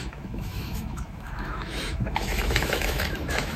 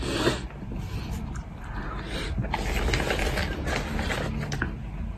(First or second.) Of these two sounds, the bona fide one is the second